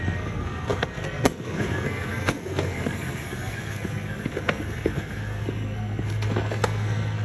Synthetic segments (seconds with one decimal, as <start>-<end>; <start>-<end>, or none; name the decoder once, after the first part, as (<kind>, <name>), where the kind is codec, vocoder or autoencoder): 0.0-7.2 (codec, SNAC)